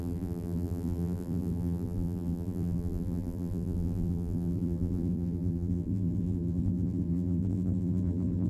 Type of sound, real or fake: fake